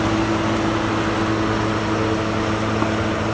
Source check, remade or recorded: recorded